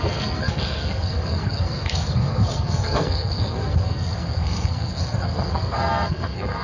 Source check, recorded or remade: remade